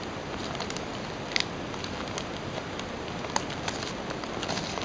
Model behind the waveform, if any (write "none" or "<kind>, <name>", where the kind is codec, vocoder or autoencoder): none